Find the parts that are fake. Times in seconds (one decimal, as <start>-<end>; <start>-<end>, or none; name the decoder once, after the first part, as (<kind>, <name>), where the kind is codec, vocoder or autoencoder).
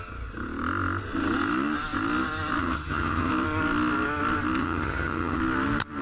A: 2.6-3.3 (vocoder, HiFi-GAN); 4.6-5.4